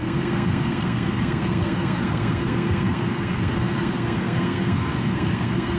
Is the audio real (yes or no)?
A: no